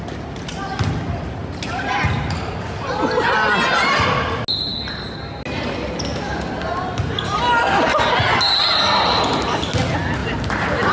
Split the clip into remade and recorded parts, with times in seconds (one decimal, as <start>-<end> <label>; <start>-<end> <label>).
0.0-10.2 recorded; 10.2-10.9 remade

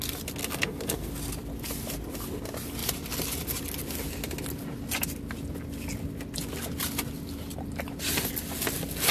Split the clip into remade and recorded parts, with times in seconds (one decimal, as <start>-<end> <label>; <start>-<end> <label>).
0.0-0.4 recorded; 0.4-1.1 remade; 1.1-9.1 recorded

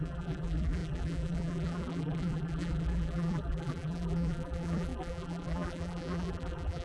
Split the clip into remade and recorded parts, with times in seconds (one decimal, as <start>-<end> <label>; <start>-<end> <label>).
0.0-6.8 remade